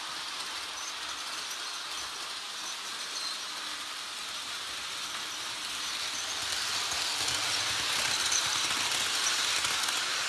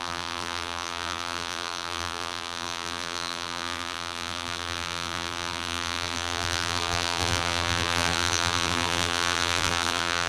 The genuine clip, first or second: first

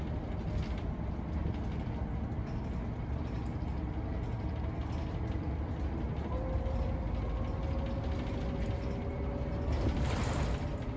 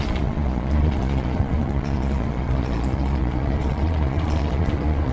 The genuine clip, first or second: first